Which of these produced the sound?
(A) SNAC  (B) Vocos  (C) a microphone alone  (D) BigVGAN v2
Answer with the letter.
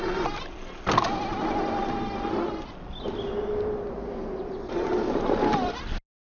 C